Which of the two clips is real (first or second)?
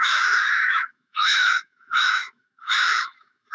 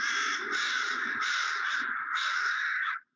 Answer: second